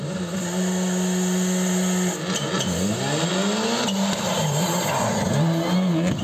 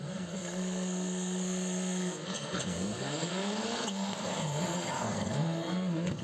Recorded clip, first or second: first